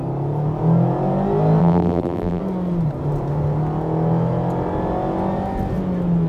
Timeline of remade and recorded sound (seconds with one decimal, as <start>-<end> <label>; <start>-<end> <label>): 0.0-1.6 recorded; 1.6-2.4 remade; 2.4-6.3 recorded